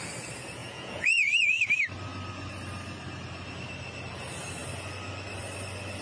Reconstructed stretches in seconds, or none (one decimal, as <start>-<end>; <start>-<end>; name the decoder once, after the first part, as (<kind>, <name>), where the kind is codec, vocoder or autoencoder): 0.6-1.6 (vocoder, Vocos)